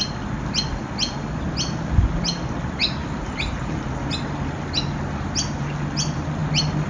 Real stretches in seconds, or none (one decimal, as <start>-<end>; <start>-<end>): 0.0-6.9